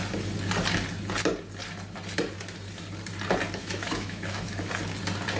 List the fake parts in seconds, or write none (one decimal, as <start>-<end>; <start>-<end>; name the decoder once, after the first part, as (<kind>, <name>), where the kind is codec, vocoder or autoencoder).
3.6-4.7 (autoencoder, DAC-VAE)